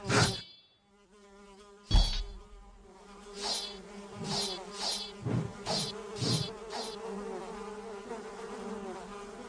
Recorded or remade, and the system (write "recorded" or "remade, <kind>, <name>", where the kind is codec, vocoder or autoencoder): recorded